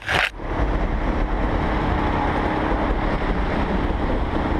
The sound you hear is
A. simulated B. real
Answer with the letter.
B